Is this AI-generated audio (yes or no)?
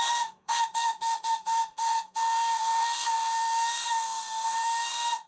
yes